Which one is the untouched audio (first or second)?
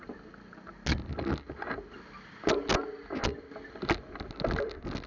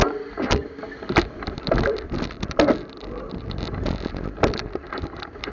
first